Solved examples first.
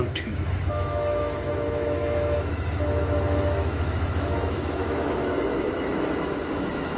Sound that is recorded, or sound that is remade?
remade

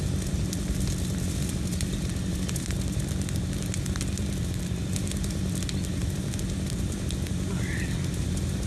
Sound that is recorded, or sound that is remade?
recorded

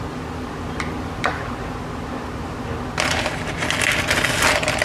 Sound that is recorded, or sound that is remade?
recorded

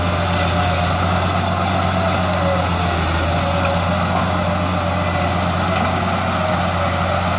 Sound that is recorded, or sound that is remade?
recorded